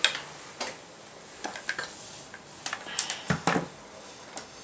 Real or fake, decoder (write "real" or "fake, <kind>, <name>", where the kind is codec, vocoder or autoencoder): real